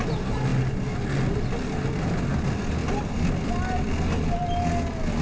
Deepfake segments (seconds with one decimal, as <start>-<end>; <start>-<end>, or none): none